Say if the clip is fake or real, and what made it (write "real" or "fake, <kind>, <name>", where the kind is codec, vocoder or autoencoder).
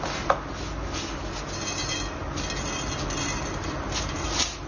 real